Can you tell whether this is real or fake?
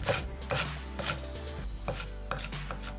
real